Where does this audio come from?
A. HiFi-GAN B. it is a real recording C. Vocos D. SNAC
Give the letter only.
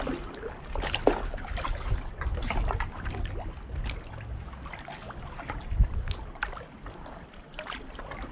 B